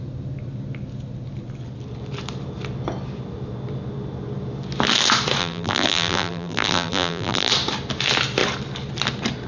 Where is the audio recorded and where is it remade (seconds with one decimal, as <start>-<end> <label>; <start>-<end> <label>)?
0.0-5.4 recorded; 5.4-7.5 remade; 7.5-9.5 recorded